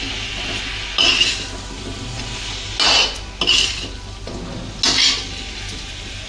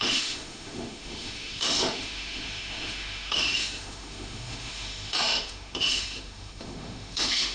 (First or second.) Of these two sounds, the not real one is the second